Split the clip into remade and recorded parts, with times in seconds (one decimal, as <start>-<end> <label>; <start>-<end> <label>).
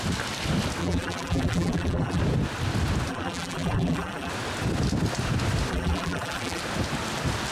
0.0-0.8 recorded; 0.8-2.2 remade; 2.2-3.1 recorded; 3.1-4.3 remade; 4.3-5.7 recorded; 5.7-6.6 remade; 6.6-7.5 recorded